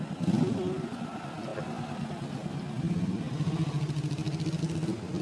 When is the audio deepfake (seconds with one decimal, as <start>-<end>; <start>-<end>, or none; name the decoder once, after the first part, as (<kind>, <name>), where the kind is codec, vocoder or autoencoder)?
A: none